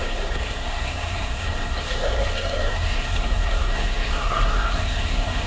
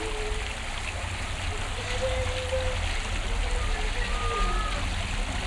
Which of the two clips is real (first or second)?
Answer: second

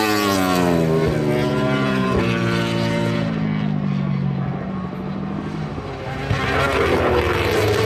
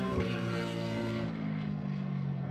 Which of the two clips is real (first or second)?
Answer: first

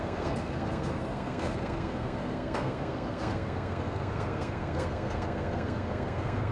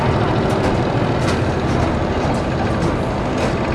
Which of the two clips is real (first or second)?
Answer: second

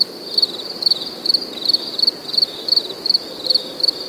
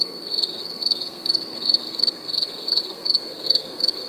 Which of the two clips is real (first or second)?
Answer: first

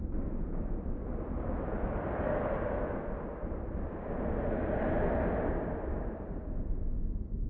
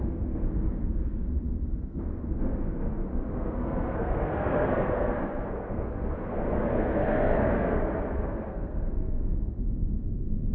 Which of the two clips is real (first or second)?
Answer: first